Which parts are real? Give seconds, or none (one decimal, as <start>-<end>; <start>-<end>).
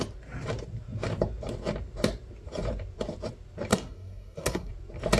0.0-3.7; 4.7-5.2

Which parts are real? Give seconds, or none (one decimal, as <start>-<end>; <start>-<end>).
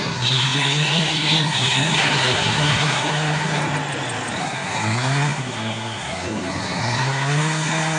3.6-4.4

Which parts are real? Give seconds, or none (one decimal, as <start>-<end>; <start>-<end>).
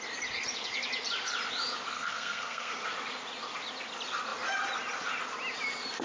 0.0-1.9; 2.7-6.0